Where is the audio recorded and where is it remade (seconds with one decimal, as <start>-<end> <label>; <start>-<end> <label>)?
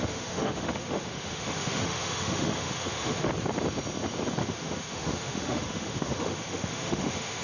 0.0-3.3 remade; 3.3-4.4 recorded; 4.4-7.4 remade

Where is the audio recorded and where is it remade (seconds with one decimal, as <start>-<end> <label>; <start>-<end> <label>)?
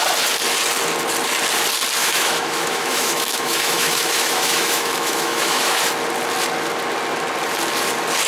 0.0-2.0 recorded; 2.0-5.8 remade; 5.8-8.3 recorded